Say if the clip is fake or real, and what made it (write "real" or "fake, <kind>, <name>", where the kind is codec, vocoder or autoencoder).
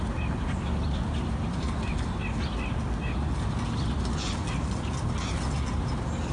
real